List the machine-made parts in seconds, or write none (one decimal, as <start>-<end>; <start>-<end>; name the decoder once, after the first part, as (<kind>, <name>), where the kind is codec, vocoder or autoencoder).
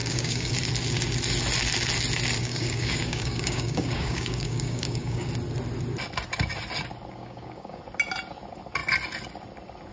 0.0-0.5 (codec, DAC); 2.4-5.3; 7.2-7.8